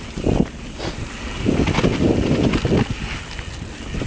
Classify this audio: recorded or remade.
recorded